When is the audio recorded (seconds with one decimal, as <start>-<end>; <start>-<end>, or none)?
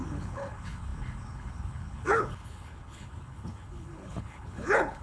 none